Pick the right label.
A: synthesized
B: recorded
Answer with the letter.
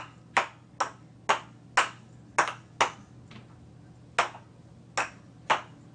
B